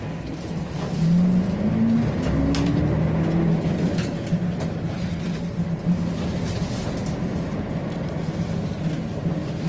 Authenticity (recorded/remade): recorded